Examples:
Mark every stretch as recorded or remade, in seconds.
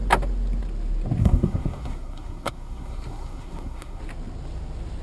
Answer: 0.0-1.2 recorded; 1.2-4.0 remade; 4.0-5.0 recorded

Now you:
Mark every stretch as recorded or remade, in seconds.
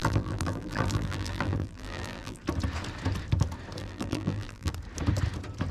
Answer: 0.0-2.4 remade; 2.4-3.8 recorded; 3.8-4.7 remade; 4.7-5.7 recorded